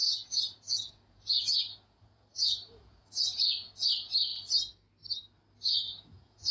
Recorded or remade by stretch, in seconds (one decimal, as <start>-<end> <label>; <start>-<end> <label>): 0.0-4.3 remade; 4.3-5.6 recorded; 5.6-6.5 remade

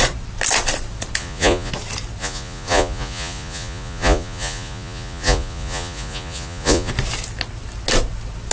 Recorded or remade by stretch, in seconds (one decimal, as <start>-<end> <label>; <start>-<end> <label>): 0.0-1.2 recorded; 1.2-1.7 remade; 1.7-2.2 recorded; 2.2-6.9 remade; 6.9-8.5 recorded

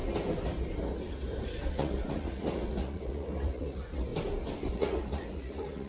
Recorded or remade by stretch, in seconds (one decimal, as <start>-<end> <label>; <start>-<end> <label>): 0.0-1.7 recorded; 1.7-4.1 remade; 4.1-4.7 recorded; 4.7-5.9 remade

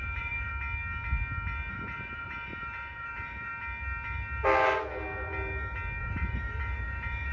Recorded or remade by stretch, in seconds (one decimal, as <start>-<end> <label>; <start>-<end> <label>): 0.0-0.5 remade; 0.5-1.7 recorded; 1.7-3.5 remade; 3.5-6.0 recorded; 6.0-7.3 remade

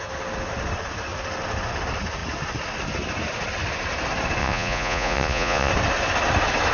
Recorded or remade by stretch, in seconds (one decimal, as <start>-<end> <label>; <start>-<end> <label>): 0.0-4.4 recorded; 4.4-5.7 remade; 5.7-6.7 recorded